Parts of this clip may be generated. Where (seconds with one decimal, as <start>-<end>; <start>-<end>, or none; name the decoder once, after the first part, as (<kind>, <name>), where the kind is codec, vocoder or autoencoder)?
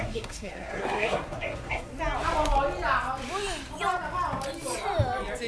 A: 0.0-1.9 (codec, SNAC)